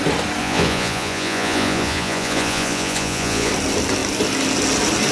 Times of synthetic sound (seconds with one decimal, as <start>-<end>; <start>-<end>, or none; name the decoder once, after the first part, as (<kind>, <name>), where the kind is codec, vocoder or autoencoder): 0.4-3.5 (vocoder, Vocos)